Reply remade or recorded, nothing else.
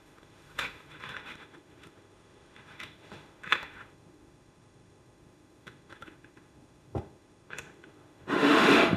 remade